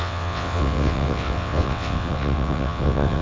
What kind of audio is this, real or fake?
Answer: fake